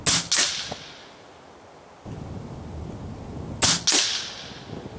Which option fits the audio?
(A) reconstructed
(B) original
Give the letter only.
B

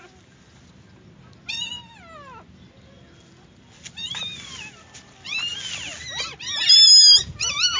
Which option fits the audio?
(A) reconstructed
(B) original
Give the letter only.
B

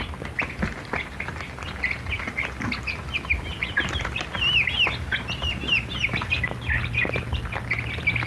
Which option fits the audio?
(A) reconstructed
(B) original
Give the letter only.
B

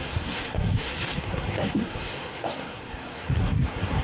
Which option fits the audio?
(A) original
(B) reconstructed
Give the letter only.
B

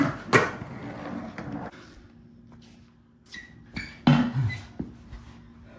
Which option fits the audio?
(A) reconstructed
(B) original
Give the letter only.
B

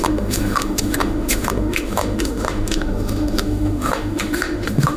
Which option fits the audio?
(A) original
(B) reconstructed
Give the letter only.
B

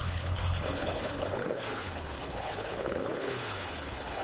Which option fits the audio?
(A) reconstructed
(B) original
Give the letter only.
A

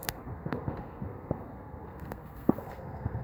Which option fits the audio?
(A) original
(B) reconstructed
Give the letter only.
B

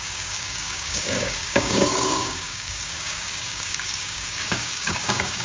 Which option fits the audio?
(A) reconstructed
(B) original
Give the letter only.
A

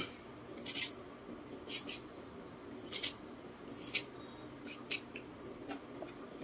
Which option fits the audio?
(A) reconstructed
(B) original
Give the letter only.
B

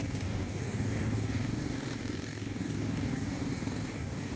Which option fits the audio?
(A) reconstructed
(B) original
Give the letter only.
A